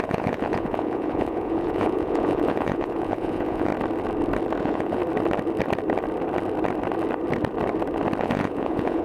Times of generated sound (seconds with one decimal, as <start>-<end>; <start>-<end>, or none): 0.0-3.7; 4.6-5.0; 8.2-9.0